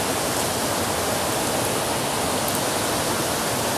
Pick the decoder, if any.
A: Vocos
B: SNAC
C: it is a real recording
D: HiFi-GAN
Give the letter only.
C